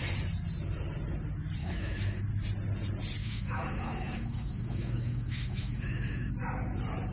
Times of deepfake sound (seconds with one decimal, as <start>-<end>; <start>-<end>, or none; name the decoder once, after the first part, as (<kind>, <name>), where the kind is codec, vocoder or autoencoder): 1.6-2.2 (autoencoder, DAC-VAE); 3.2-6.3